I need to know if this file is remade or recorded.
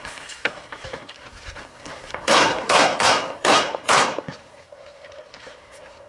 remade